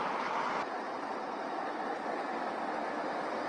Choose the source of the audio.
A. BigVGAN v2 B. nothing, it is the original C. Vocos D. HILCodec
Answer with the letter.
B